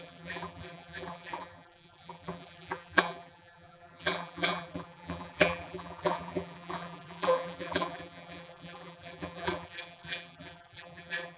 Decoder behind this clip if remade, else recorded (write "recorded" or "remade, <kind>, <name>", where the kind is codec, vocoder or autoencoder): remade, vocoder, BigVGAN v2